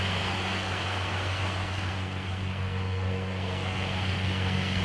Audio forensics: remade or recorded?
remade